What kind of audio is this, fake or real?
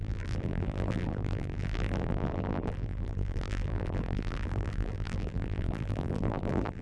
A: fake